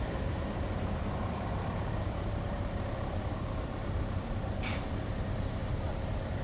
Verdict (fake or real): fake